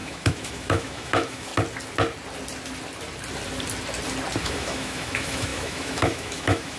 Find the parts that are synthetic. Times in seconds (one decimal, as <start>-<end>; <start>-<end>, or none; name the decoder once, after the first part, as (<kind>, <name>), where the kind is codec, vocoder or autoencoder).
0.0-1.5 (autoencoder, DAC-VAE); 4.4-6.8

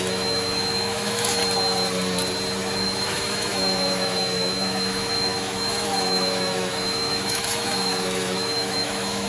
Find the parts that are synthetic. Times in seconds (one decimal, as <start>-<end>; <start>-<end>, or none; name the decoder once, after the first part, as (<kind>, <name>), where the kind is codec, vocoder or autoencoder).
0.0-1.4 (autoencoder, DAC-VAE); 2.7-9.3